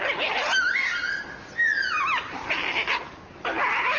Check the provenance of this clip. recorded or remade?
recorded